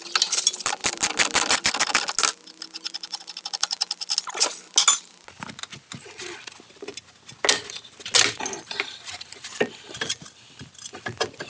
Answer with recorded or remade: recorded